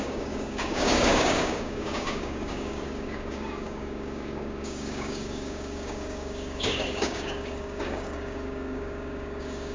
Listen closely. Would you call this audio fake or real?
fake